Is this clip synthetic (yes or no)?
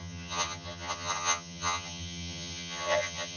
yes